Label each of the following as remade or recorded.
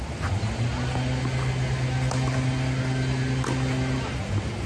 recorded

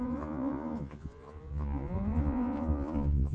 remade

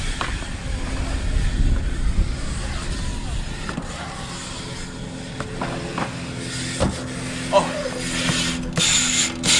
recorded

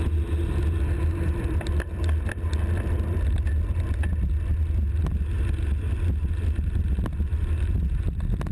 recorded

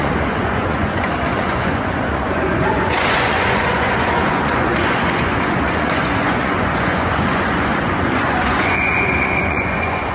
remade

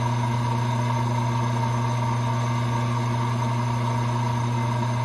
recorded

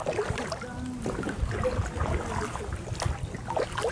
recorded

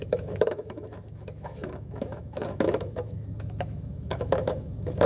remade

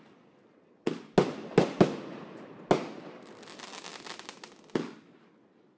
recorded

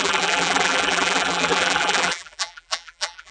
remade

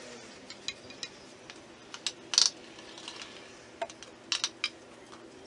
recorded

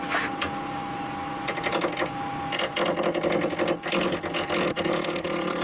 recorded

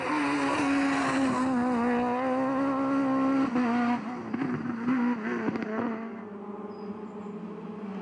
recorded